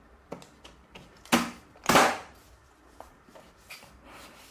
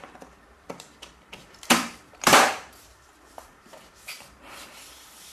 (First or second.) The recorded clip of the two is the first